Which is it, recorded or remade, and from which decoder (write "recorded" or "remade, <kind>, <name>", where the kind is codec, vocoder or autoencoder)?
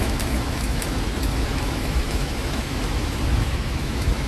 remade, autoencoder, DAC-VAE